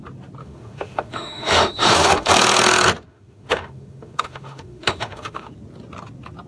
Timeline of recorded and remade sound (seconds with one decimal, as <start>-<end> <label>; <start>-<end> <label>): 0.0-0.4 recorded; 0.4-2.3 remade; 2.3-3.1 recorded; 3.1-5.5 remade; 5.5-6.5 recorded